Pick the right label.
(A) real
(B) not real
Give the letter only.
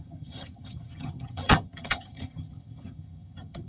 B